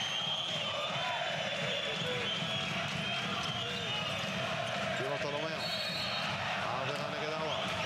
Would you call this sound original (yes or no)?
yes